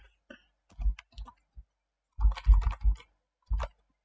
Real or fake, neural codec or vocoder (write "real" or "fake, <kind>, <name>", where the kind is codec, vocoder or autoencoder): real